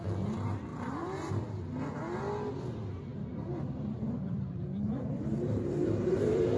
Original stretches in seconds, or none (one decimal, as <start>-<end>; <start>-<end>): 0.0-0.7; 1.3-3.1